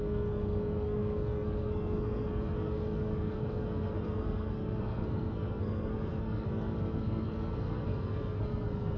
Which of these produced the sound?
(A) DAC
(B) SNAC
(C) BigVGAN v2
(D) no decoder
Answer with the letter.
B